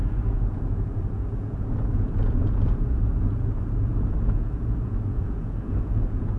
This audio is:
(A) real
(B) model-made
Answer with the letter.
B